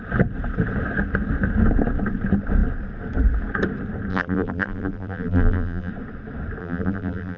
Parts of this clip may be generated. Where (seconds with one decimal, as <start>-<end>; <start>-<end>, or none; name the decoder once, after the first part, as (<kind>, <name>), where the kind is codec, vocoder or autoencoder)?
4.1-5.9 (vocoder, BigVGAN v2); 6.6-7.4